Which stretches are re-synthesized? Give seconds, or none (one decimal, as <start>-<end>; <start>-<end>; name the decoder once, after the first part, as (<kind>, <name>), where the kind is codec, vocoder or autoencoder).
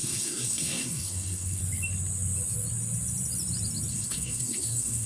0.0-1.6 (codec, SNAC); 3.9-5.1